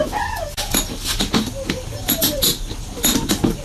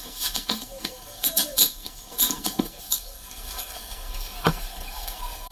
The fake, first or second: second